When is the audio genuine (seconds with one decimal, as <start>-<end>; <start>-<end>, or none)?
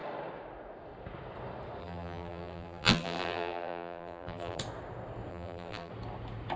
0.0-1.8; 4.6-5.3; 5.9-6.6